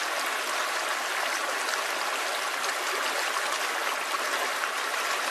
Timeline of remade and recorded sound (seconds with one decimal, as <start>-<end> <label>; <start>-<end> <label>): 0.0-5.3 recorded

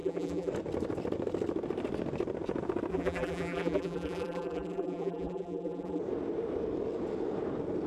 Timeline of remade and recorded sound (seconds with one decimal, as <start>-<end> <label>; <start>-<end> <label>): 0.0-0.5 remade; 0.5-2.9 recorded; 2.9-6.0 remade; 6.0-7.9 recorded

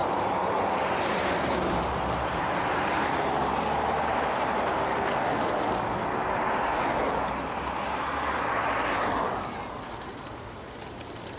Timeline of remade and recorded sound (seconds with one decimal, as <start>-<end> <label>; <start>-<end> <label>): 0.0-4.5 remade; 4.5-11.4 recorded

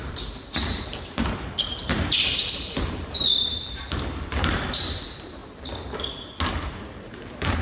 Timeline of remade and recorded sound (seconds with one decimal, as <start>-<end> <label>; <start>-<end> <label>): 0.0-5.4 remade; 5.4-6.5 recorded; 6.5-7.6 remade

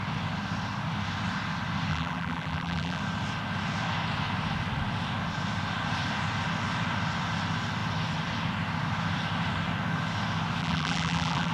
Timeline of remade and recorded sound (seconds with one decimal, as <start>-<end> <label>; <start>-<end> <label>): 0.0-1.9 recorded; 1.9-3.0 remade; 3.0-10.6 recorded; 10.6-11.5 remade